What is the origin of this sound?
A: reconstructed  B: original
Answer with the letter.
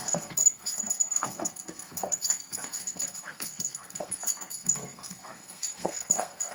A